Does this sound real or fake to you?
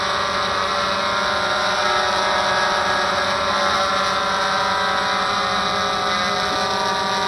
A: real